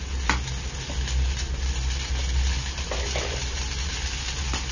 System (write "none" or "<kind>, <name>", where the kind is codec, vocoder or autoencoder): none